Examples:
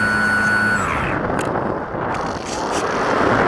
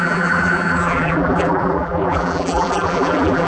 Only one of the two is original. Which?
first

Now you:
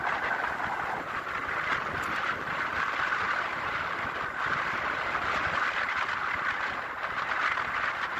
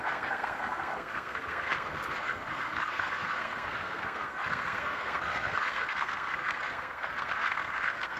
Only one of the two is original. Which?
first